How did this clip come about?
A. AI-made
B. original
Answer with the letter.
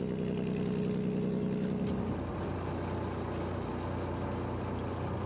B